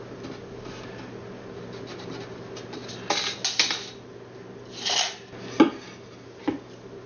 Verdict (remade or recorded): recorded